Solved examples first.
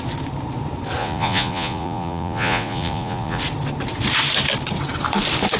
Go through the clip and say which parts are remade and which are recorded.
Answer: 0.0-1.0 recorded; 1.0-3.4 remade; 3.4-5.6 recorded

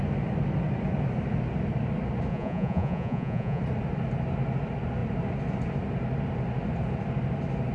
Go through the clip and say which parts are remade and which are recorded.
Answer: 0.0-2.3 recorded; 2.3-3.6 remade; 3.6-7.7 recorded

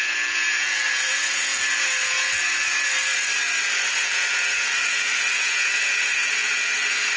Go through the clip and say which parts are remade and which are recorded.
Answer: 0.0-3.1 remade; 3.1-4.0 recorded; 4.0-7.2 remade